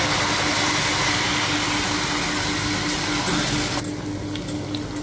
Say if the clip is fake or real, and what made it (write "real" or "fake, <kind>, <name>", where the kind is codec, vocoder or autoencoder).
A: real